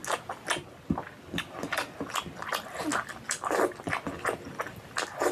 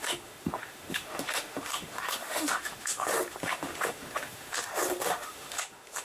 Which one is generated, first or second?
second